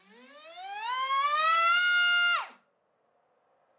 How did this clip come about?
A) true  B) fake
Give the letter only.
A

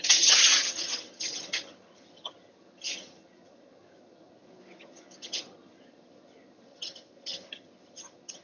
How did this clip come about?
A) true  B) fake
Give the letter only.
B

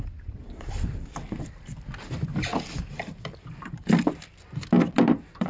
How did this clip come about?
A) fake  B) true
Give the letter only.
A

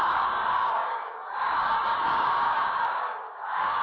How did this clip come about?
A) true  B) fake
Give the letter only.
B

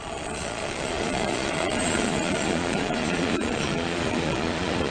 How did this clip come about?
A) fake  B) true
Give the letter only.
A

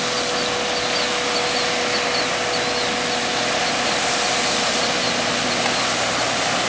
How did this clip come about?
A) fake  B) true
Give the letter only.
B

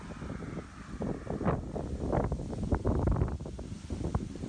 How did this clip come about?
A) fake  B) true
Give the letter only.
B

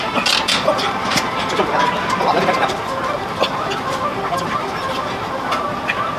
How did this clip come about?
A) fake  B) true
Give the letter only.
B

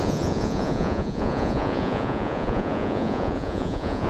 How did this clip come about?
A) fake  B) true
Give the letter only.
A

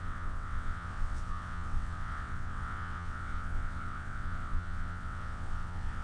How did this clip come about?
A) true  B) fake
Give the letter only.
B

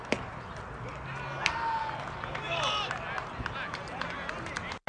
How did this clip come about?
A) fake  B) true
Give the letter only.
B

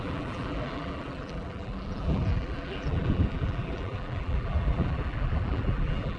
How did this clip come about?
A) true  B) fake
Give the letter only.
B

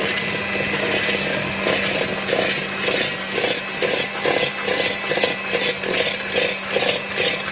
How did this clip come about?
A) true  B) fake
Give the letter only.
A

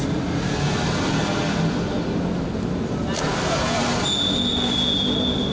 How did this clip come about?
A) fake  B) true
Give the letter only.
B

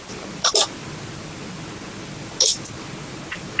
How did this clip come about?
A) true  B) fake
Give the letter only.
A